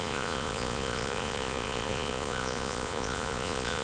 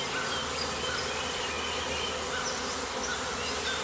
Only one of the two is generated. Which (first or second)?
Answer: first